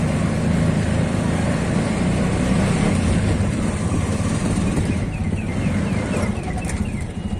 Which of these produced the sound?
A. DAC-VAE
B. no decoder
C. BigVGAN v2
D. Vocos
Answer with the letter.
C